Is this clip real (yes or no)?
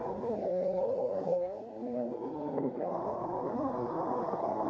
no